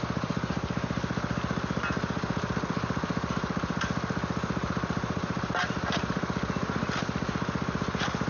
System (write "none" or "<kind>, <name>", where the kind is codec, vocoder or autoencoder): none